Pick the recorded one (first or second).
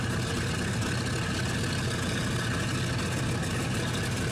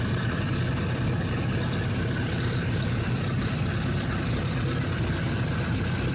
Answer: first